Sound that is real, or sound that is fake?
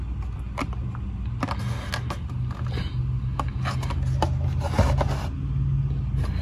real